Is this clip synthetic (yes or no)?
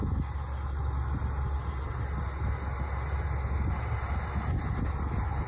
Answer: no